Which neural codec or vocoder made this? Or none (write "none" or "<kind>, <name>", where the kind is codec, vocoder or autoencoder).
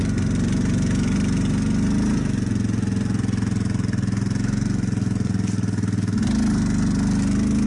none